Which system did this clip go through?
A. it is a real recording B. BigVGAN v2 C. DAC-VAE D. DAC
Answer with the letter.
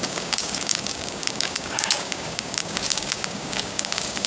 D